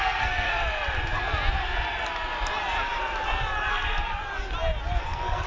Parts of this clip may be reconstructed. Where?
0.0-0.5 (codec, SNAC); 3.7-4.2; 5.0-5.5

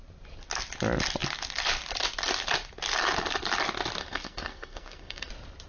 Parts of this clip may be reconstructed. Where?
4.0-5.3 (codec, SNAC)

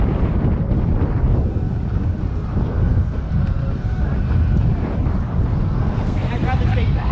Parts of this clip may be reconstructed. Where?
2.7-3.3 (codec, SNAC); 5.6-6.3

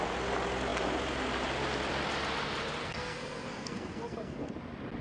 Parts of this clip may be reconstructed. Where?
2.8-4.5 (codec, SNAC)

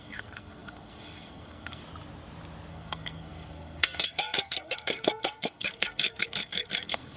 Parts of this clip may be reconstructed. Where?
0.0-1.8 (codec, SNAC); 2.7-7.2

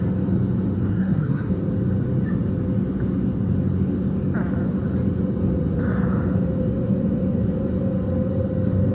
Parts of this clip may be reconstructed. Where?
0.9-1.5 (codec, SNAC)

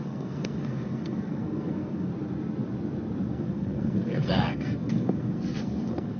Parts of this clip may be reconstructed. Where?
0.0-2.1 (codec, SNAC); 3.3-6.2